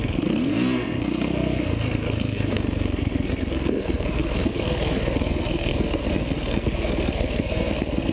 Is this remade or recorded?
remade